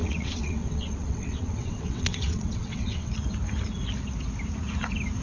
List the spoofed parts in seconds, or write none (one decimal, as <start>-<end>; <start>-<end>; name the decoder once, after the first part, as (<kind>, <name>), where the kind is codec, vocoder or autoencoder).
0.0-3.1 (vocoder, WaveNeXt)